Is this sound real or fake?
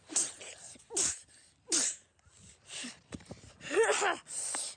real